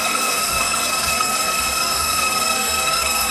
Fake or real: fake